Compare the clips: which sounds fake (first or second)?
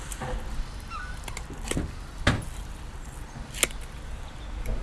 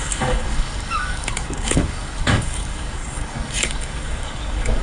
second